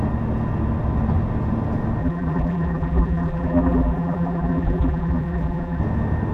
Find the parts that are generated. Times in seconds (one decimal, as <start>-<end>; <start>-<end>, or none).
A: 2.0-5.8